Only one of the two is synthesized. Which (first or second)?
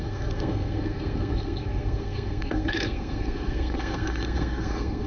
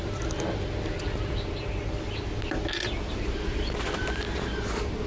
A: first